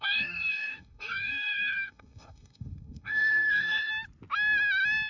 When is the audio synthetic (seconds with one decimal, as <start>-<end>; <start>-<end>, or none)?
0.0-3.9